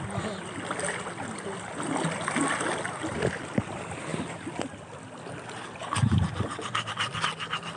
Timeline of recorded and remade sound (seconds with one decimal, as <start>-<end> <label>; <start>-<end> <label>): 0.0-7.8 recorded